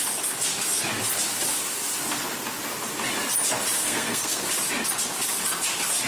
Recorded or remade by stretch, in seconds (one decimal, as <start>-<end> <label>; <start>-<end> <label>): 0.0-3.8 recorded; 3.8-4.4 remade; 4.4-6.1 recorded